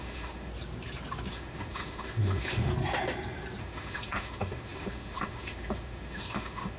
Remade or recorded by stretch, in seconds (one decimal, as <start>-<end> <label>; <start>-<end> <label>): 0.0-0.5 remade; 0.5-1.3 recorded; 1.3-2.7 remade; 2.7-3.6 recorded; 3.6-6.8 remade